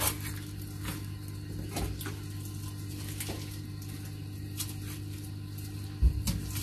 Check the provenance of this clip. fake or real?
real